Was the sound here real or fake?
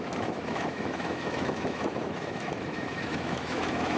fake